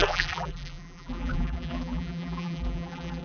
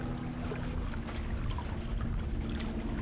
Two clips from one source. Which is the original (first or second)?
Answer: second